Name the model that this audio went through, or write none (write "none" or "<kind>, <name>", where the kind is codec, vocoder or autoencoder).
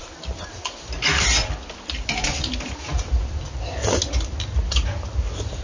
none